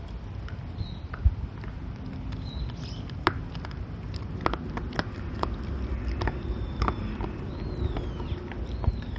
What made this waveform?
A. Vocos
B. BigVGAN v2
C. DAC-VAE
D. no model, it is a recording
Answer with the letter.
D